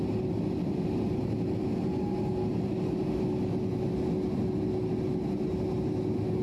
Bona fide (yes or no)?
yes